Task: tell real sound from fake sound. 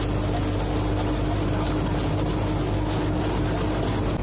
real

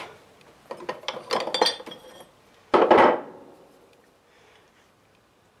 real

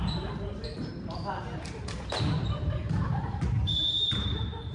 fake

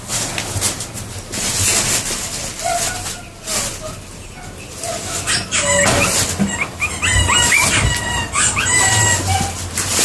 real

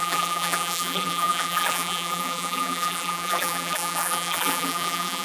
fake